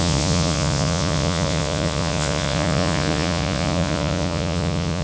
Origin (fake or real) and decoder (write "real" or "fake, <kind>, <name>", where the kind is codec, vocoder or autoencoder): fake, vocoder, Vocos